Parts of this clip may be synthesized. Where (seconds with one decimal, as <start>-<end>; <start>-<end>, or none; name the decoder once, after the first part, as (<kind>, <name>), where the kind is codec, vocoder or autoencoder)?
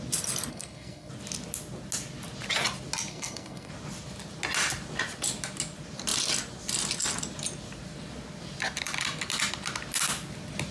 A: 0.5-1.1 (codec, SNAC); 3.1-3.7